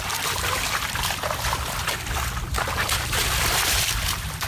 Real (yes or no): yes